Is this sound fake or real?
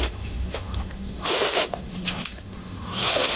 fake